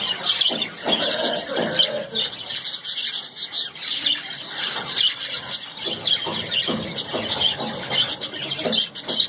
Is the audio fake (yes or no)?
no